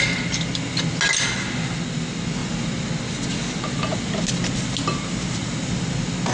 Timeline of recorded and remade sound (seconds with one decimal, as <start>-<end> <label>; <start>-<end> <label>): 0.0-6.3 recorded